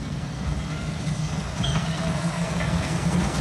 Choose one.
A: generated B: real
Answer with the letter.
A